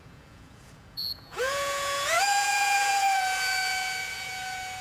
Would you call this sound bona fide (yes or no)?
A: no